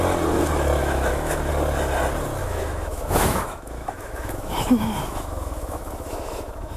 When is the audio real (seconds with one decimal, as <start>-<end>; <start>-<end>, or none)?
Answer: 0.0-0.8; 1.5-2.4